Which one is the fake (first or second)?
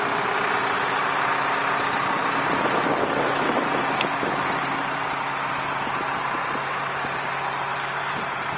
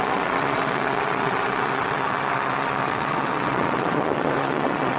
second